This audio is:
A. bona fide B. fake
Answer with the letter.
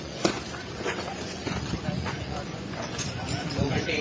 B